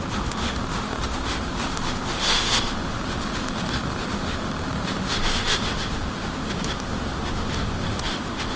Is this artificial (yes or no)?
yes